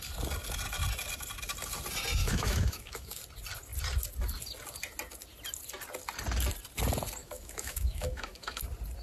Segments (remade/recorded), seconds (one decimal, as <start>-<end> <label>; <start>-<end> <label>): 0.0-2.2 recorded; 2.2-3.2 remade; 3.2-7.2 recorded; 7.2-8.6 remade; 8.6-9.0 recorded